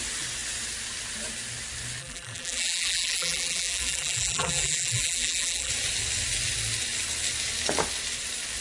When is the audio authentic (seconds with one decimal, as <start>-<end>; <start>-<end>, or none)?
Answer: 0.0-2.0; 5.7-8.6